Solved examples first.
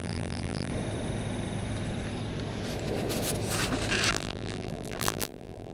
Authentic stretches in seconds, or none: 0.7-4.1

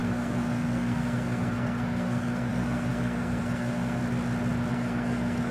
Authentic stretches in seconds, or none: 4.0-4.7